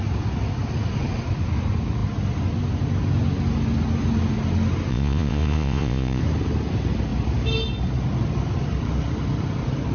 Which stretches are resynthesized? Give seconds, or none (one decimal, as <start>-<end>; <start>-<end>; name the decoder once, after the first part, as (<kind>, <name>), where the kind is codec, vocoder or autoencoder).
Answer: 4.9-6.2 (vocoder, Vocos)